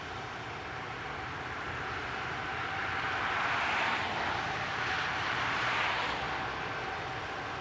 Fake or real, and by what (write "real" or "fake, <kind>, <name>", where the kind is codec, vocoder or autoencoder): real